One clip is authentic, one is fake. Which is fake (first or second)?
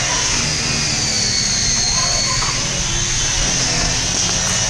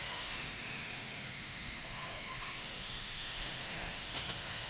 second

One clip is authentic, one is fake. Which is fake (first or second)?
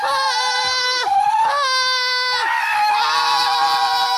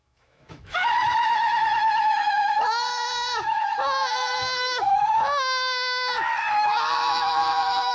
second